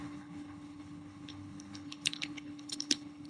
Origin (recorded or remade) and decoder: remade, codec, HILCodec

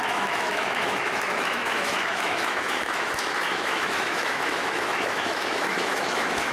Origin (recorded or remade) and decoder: remade, autoencoder, DAC-VAE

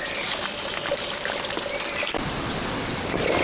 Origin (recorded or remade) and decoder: recorded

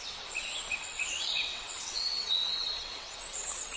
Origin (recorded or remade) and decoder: remade, vocoder, WaveNeXt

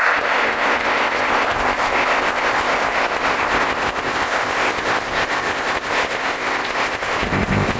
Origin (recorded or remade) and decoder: remade, codec, ZipCodec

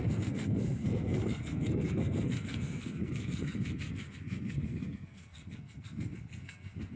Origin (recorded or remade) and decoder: remade, codec, SNAC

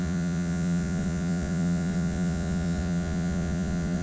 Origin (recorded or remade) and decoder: remade, vocoder, Vocos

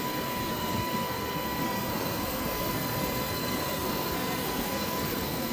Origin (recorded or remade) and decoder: remade, codec, SNAC